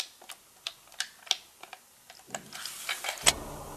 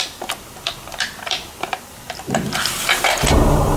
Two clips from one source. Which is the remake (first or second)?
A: second